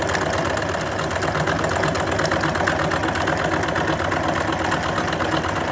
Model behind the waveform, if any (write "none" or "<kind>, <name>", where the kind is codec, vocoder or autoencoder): none